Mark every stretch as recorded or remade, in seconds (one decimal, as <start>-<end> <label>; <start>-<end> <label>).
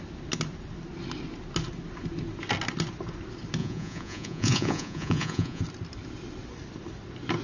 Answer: 0.0-3.6 recorded; 3.6-5.6 remade; 5.6-7.4 recorded